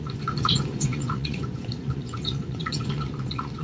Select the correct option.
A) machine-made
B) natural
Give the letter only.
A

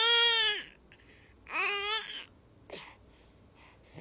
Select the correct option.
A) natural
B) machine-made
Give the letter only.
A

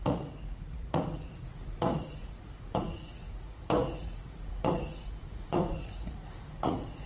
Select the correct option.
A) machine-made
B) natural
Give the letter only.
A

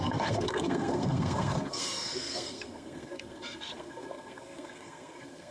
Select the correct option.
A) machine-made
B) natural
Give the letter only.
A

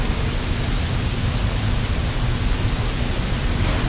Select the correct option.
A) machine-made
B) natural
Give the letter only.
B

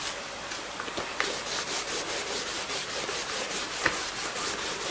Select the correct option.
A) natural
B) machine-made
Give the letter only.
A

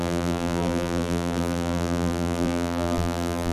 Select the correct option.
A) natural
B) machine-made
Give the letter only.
B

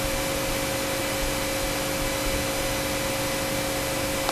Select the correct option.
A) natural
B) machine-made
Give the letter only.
A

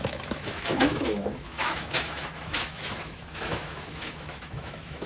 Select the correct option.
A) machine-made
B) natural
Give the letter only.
A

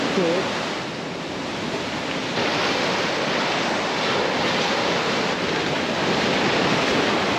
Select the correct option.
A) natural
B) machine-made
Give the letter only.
A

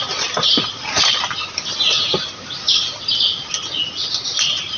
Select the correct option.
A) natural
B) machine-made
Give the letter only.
A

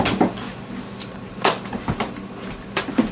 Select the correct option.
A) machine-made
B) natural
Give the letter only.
B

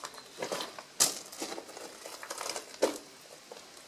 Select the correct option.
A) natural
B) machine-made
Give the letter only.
A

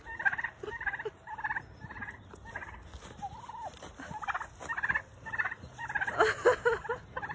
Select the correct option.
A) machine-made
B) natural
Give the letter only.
B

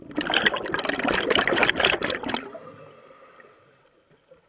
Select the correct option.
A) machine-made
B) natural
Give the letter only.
B